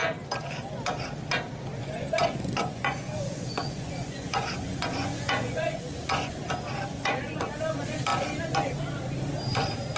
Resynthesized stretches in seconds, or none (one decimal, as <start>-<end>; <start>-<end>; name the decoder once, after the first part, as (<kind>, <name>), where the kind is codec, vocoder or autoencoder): 1.8-6.5 (vocoder, Vocos); 6.9-7.5